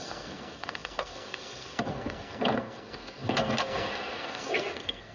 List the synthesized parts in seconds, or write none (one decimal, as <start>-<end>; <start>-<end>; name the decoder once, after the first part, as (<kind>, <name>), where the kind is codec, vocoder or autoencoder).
0.0-5.1 (codec, SNAC)